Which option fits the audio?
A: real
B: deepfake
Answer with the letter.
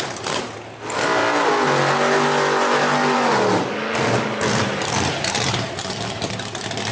A